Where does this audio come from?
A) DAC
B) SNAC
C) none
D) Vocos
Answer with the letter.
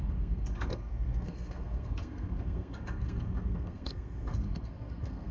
B